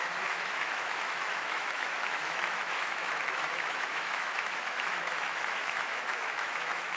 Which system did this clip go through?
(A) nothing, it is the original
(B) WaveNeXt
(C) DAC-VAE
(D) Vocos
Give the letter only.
C